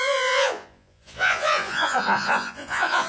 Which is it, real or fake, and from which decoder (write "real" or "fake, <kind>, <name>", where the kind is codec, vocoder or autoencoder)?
fake, vocoder, Vocos